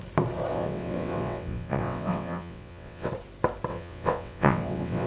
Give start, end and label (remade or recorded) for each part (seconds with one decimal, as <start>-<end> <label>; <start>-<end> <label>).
0.0-0.5 recorded; 0.5-3.1 remade; 3.1-3.7 recorded; 3.7-5.1 remade